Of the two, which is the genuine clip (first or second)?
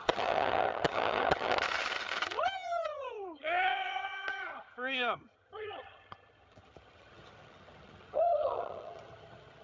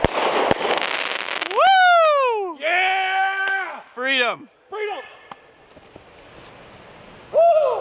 second